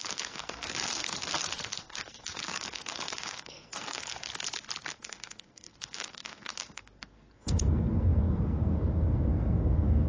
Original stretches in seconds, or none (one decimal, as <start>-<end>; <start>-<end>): 4.3-4.9